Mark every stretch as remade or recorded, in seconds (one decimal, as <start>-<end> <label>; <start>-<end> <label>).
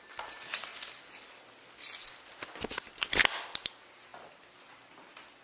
0.0-5.4 recorded